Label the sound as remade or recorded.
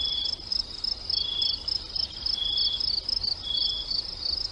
recorded